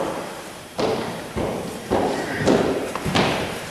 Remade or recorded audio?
remade